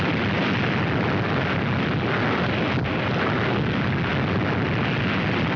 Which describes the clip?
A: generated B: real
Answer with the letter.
B